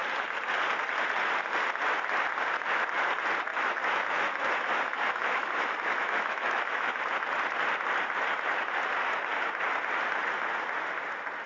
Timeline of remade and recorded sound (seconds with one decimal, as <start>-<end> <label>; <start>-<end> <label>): 0.0-3.5 recorded; 3.5-7.0 remade; 7.0-11.5 recorded